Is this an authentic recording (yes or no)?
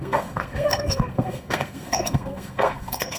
no